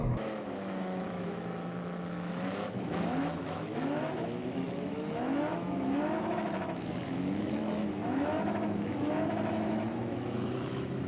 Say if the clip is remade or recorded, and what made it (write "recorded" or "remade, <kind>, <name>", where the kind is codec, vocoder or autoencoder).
remade, autoencoder, DAC-VAE